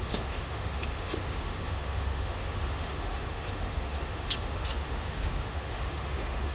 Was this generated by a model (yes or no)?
yes